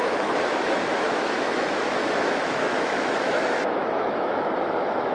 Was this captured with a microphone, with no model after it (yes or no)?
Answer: no